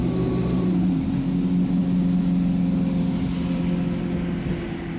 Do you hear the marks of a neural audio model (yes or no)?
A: no